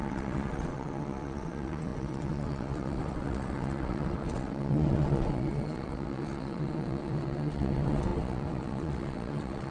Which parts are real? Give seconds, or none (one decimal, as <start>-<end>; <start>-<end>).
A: none